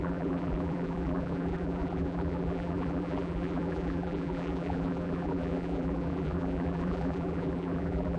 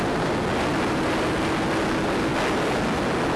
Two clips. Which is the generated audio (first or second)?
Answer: first